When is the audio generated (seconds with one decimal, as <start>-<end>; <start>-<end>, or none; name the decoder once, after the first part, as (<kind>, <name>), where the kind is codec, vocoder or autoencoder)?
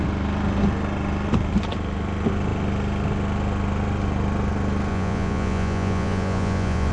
4.9-6.9 (vocoder, Vocos)